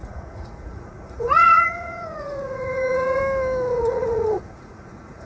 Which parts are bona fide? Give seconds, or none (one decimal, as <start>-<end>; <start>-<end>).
3.2-3.7